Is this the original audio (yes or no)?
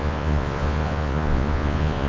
no